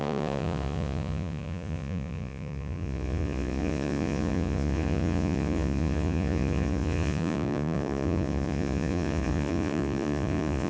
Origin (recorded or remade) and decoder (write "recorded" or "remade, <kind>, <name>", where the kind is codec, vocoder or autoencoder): remade, vocoder, Vocos